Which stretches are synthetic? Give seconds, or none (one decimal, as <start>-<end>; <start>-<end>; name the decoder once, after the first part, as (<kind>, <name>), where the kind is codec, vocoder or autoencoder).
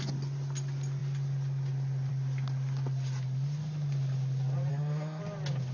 4.7-5.2 (codec, SNAC)